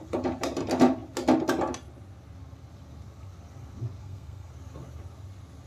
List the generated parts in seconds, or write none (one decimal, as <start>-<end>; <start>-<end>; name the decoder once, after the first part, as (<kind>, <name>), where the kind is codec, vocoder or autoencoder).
4.0-4.5 (codec, SNAC)